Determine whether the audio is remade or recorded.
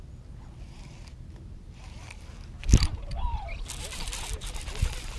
recorded